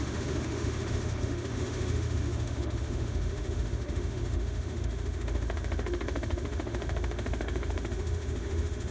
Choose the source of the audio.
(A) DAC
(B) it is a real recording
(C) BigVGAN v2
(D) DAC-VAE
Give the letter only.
D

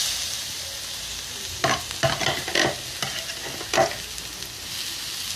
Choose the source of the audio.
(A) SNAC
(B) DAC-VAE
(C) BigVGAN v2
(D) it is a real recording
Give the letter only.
D